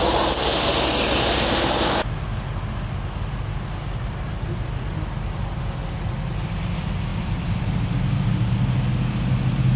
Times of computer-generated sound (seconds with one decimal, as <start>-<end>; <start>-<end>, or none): 7.1-7.6